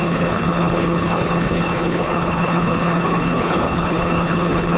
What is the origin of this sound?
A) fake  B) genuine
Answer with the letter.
A